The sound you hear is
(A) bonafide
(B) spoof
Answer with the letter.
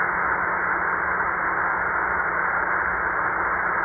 A